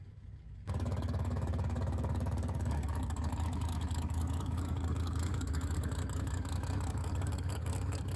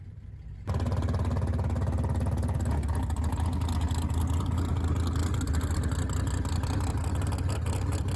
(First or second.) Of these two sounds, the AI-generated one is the first